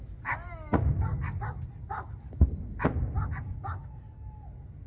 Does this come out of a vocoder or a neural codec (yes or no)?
no